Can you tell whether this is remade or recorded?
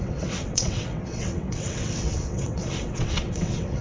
remade